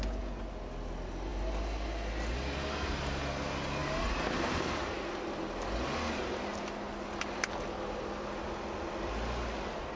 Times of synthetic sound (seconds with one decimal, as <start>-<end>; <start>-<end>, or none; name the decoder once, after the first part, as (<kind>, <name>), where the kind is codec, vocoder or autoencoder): none